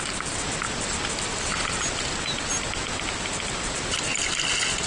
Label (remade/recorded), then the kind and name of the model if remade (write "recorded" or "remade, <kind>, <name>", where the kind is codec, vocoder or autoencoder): recorded